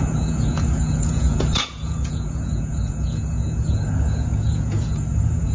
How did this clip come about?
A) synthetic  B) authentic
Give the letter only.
A